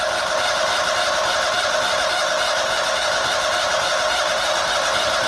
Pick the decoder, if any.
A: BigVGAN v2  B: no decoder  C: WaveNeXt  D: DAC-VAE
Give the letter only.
B